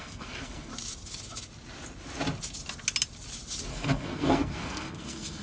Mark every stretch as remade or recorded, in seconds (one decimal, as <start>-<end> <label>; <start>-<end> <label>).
0.0-0.7 remade; 0.7-3.7 recorded; 3.7-5.4 remade